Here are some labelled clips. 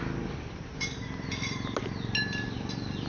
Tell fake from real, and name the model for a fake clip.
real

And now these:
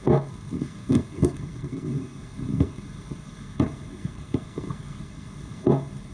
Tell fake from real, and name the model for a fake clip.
fake, codec, SNAC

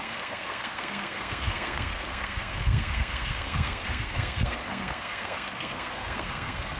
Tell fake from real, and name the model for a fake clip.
fake, codec, SNAC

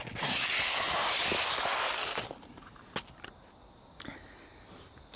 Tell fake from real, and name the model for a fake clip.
real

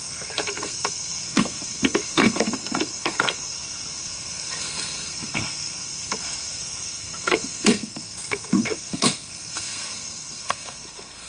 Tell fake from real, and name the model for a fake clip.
fake, codec, SNAC